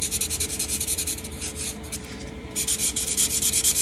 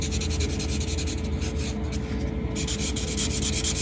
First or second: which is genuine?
second